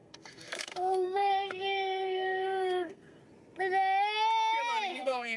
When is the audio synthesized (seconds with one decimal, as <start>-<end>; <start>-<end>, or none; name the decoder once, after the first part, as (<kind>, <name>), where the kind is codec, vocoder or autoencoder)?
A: 0.0-3.2 (codec, SNAC); 4.9-5.4

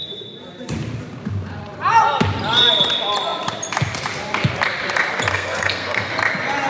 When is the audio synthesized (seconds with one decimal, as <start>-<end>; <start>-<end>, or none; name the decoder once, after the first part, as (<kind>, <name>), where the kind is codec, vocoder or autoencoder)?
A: 5.3-6.1 (codec, SNAC)

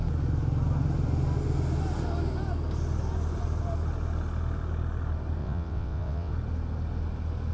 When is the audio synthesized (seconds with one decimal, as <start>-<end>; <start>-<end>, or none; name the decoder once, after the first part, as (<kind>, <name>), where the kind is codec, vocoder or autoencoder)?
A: 5.4-6.3 (vocoder, WaveNeXt)

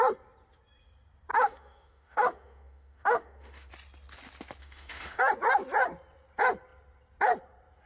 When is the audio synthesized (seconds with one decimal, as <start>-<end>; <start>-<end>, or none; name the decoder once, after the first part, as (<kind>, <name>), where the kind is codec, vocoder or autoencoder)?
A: 1.3-3.7 (autoencoder, DAC-VAE); 4.6-5.2

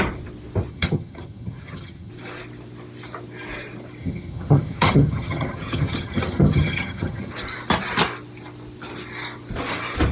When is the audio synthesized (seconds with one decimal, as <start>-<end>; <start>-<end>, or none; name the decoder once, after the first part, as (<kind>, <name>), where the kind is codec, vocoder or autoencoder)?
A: 0.7-2.1 (vocoder, HiFi-GAN); 4.0-7.3

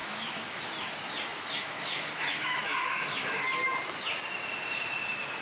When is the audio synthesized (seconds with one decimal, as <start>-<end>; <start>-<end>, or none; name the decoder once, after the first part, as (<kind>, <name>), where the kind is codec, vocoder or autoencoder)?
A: 0.0-0.6 (autoencoder, DAC-VAE); 1.3-3.4

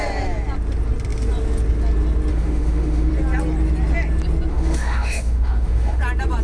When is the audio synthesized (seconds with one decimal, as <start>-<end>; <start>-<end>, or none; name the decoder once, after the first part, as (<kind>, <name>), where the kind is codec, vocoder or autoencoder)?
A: 2.3-3.1 (autoencoder, DAC-VAE); 4.5-6.0